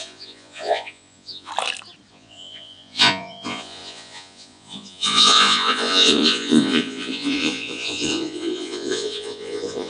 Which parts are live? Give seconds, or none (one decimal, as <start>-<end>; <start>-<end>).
1.5-2.1